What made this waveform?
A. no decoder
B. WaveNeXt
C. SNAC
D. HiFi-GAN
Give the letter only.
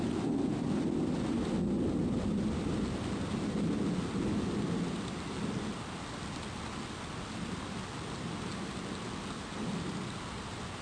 A